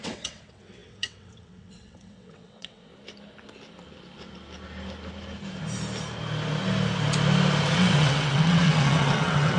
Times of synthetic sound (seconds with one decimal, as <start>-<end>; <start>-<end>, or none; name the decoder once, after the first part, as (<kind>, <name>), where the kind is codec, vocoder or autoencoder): 0.0-2.9 (vocoder, WaveNeXt); 7.7-9.6